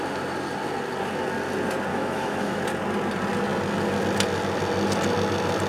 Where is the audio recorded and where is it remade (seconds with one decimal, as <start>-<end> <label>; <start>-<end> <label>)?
0.0-1.9 recorded; 1.9-2.6 remade; 2.6-5.7 recorded